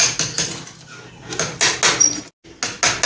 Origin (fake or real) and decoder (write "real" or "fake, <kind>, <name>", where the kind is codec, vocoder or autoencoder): real